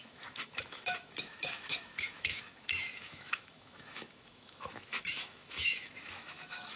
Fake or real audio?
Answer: fake